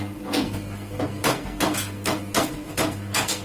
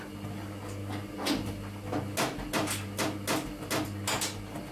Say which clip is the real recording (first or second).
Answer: second